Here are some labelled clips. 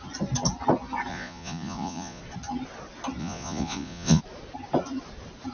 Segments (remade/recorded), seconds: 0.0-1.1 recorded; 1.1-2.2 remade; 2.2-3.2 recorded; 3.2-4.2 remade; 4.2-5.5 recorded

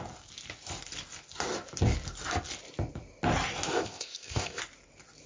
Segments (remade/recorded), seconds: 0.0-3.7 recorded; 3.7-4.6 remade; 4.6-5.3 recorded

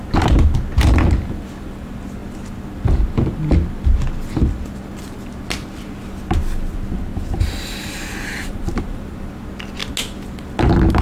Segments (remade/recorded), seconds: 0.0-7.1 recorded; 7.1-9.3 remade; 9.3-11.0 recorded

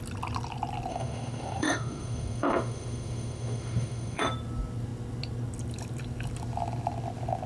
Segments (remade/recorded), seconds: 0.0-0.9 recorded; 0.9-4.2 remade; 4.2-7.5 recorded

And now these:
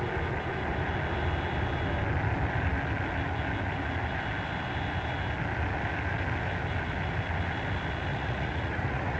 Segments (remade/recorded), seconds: 0.0-8.1 recorded; 8.1-9.2 remade